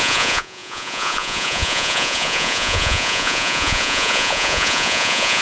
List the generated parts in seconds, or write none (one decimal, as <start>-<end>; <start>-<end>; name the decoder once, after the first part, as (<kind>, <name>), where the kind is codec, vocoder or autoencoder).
0.0-5.4 (vocoder, Vocos)